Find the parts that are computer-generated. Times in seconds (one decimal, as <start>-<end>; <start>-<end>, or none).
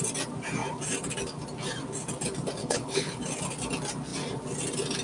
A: 2.6-3.2